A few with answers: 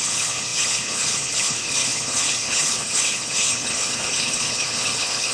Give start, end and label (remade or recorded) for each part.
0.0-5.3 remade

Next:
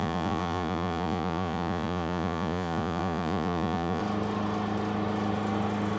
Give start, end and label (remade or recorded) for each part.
0.0-4.0 remade; 4.0-6.0 recorded

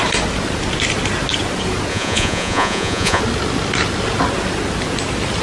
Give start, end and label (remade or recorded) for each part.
0.0-1.9 recorded; 1.9-3.2 remade; 3.2-5.4 recorded